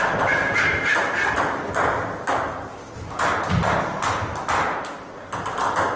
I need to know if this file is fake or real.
real